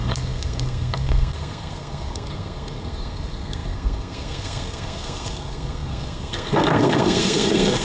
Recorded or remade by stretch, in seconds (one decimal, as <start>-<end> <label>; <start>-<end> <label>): 0.0-7.8 remade